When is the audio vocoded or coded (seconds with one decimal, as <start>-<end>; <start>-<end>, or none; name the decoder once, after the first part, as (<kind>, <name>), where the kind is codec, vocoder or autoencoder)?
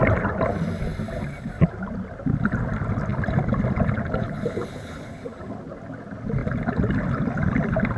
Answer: 4.2-5.2 (codec, HILCodec)